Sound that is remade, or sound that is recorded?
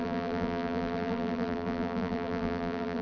remade